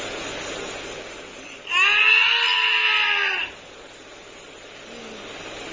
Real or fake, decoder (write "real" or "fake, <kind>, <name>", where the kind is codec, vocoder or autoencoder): real